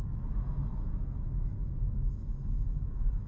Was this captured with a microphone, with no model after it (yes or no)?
no